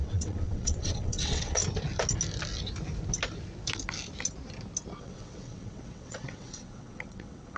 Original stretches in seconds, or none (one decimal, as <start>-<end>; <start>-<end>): 1.6-5.0